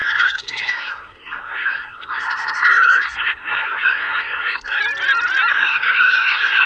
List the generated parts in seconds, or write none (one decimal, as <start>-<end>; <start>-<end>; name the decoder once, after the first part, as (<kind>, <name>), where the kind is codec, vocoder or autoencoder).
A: 0.0-4.8 (codec, SNAC); 5.5-6.7